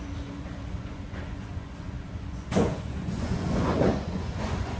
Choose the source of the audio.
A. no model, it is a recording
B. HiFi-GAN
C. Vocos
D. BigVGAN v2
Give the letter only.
C